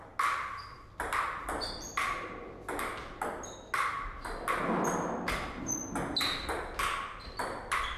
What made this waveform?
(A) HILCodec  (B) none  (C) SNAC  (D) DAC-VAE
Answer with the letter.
B